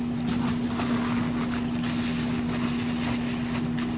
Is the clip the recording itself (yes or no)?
yes